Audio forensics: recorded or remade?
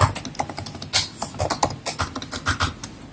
recorded